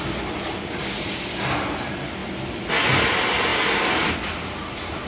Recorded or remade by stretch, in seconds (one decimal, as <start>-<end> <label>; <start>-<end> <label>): 0.0-5.1 recorded